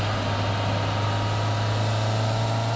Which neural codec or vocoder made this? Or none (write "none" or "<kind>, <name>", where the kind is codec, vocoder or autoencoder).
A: none